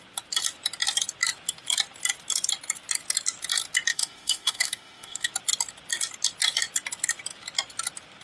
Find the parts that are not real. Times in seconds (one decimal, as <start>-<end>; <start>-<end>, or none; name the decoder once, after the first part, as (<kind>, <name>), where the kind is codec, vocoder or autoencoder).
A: 3.9-5.3 (autoencoder, DAC-VAE)